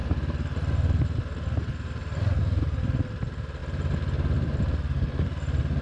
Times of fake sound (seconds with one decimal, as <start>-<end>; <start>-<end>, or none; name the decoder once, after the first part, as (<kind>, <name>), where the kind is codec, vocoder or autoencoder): none